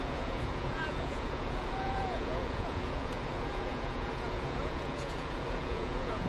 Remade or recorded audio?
remade